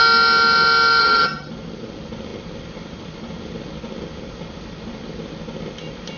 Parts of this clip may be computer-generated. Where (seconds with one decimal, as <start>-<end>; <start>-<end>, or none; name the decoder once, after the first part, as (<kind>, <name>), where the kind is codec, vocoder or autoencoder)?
1.0-1.5 (vocoder, HiFi-GAN)